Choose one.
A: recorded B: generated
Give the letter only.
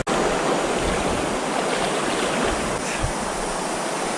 A